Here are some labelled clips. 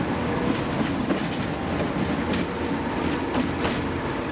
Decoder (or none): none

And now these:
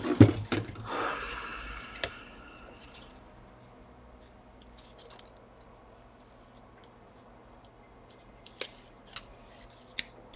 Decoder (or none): none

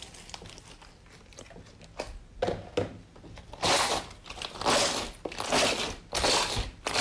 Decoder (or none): none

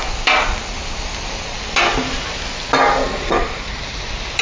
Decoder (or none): none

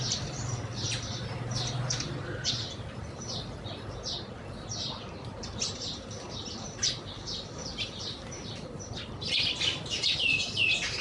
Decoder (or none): vocoder, BigVGAN v2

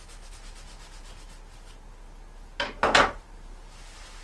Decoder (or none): none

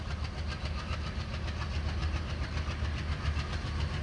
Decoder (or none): none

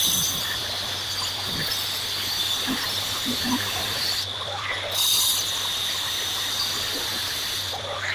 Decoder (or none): vocoder, BigVGAN v2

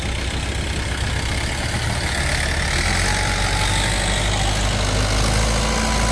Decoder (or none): none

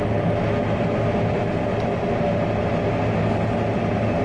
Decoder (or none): none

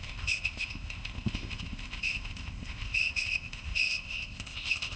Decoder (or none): codec, ZipCodec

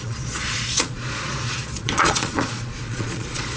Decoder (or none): vocoder, Vocos